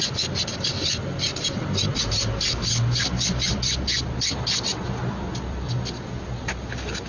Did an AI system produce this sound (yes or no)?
no